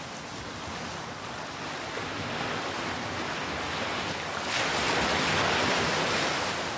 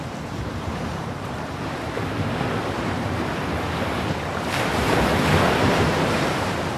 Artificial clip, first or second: second